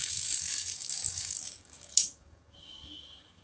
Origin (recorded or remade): remade